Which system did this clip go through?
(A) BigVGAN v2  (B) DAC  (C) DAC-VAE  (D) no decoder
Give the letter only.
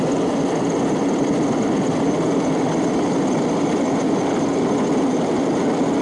D